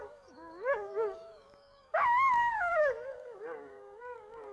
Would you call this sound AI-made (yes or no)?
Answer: yes